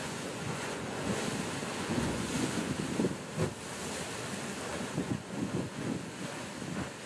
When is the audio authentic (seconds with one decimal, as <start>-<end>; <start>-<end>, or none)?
1.2-1.7; 2.7-4.7; 6.5-7.1